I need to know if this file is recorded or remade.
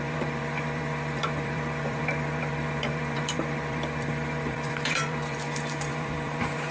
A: remade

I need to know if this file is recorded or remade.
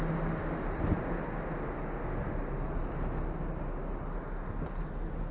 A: recorded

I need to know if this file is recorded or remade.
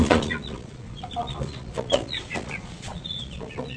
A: remade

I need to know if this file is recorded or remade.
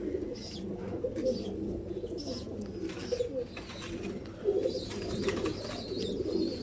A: recorded